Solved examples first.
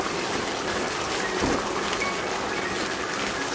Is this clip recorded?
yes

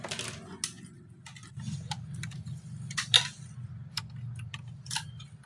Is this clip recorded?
yes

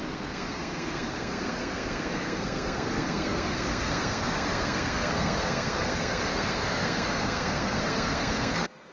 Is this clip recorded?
no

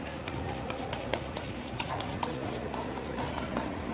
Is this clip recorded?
no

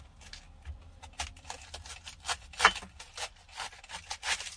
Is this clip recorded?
yes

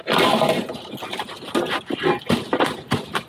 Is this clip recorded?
yes